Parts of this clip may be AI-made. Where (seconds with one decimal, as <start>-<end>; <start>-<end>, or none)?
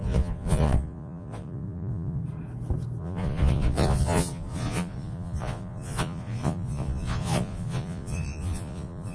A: 0.0-2.2; 3.0-9.1